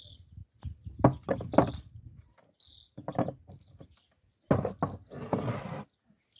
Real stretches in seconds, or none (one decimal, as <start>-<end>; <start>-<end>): 0.0-6.4